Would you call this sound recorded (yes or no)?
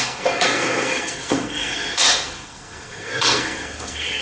no